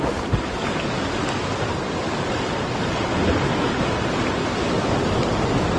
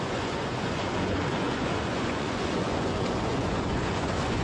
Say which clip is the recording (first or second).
first